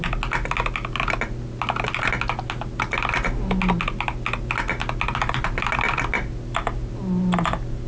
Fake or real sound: real